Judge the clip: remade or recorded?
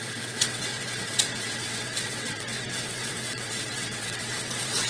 remade